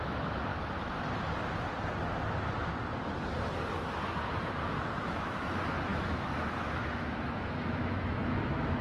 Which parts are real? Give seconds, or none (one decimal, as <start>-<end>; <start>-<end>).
0.5-5.0